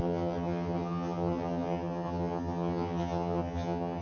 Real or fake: fake